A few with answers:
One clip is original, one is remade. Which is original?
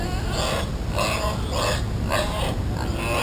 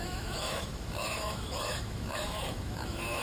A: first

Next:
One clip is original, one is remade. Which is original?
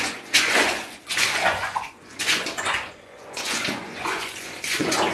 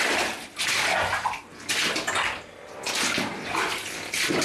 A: second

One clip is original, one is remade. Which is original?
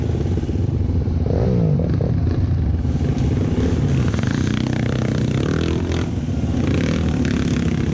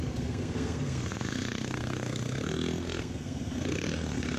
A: first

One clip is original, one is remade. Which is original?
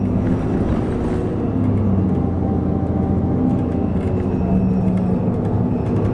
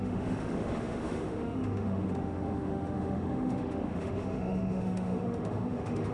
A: first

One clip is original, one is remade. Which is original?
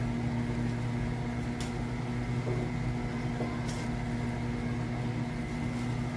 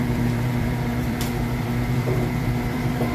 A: first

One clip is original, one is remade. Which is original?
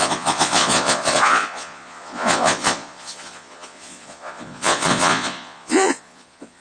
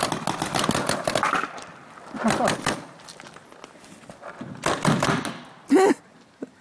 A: second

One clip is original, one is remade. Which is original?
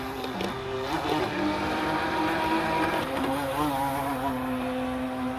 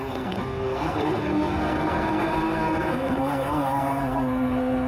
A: first